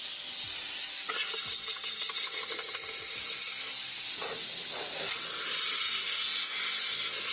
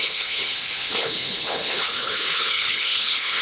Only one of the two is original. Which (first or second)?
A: first